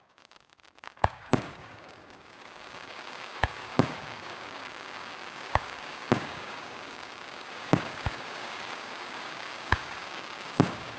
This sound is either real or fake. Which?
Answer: fake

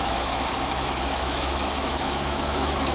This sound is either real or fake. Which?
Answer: fake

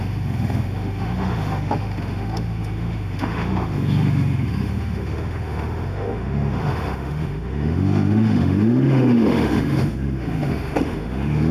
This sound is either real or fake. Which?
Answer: fake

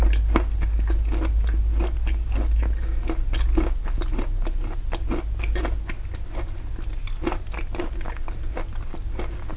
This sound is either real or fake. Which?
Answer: real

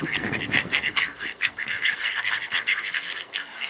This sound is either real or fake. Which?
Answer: fake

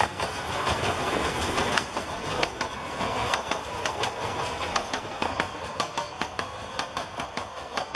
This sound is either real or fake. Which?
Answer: fake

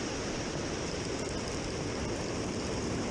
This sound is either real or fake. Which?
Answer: real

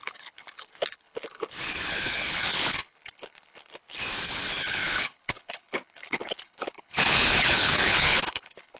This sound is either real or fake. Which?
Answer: fake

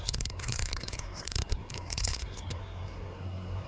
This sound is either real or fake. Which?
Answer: fake